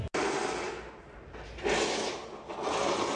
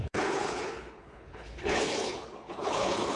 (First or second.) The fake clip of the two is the second